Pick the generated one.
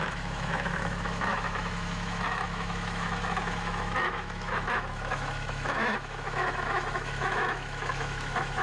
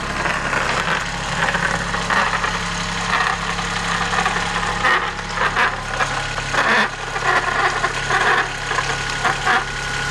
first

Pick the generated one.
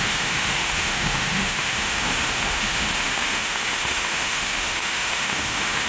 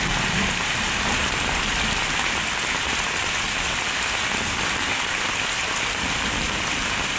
first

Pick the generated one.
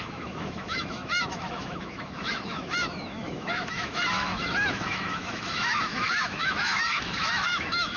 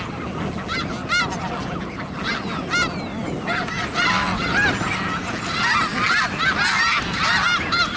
first